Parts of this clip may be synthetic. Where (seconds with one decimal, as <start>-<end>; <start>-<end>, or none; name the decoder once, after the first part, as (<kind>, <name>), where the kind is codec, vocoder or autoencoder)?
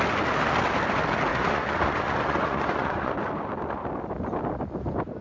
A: 1.3-3.1 (vocoder, Vocos)